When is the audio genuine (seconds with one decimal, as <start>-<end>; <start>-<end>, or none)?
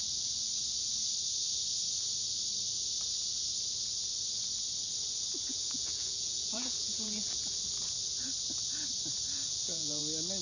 0.0-5.5; 7.6-9.5; 10.0-10.4